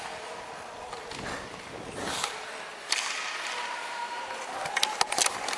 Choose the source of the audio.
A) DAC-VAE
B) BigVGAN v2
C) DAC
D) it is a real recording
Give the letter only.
D